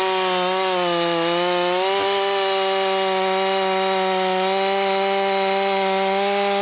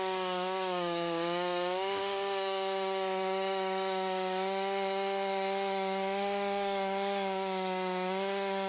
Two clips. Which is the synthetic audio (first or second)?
second